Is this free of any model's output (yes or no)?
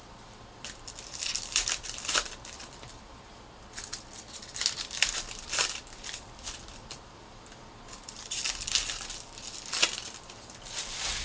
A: no